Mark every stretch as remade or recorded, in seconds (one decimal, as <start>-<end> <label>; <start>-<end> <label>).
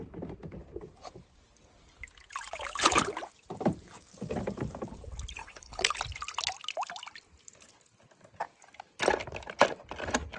0.0-5.4 recorded; 5.4-6.0 remade; 6.0-10.4 recorded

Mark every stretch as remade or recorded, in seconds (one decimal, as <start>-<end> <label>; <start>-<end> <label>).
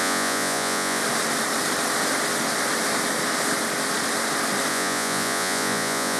0.0-1.0 remade; 1.0-4.7 recorded; 4.7-6.2 remade